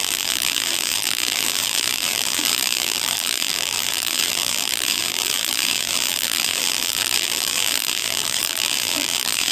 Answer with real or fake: fake